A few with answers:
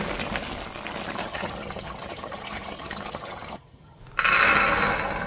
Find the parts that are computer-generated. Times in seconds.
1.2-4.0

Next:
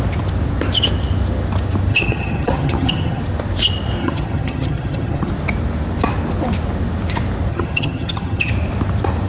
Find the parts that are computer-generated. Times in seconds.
1.9-3.2; 4.0-5.3; 7.5-8.5

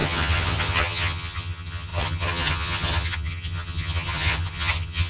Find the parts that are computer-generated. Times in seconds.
0.0-5.1

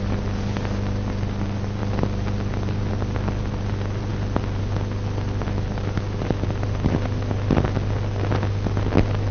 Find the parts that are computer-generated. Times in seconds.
none

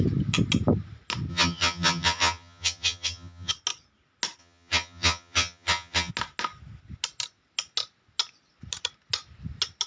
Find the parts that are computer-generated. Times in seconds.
1.3-3.5; 4.4-6.1

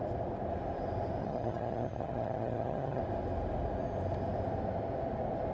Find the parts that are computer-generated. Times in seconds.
1.2-3.0